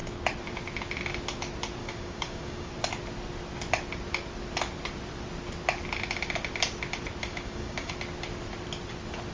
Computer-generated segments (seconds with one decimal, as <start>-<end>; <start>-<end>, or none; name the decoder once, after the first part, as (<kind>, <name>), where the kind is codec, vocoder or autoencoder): 1.8-2.7 (codec, DAC); 7.2-7.9